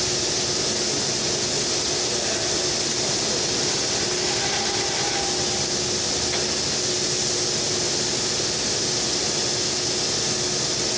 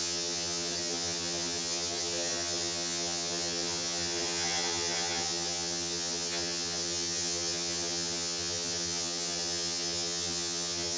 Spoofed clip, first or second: second